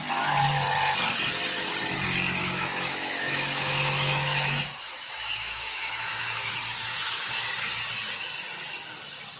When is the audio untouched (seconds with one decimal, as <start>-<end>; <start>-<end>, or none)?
0.0-2.4; 7.3-9.4